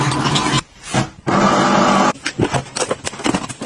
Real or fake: real